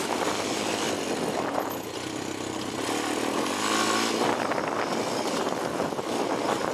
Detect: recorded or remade recorded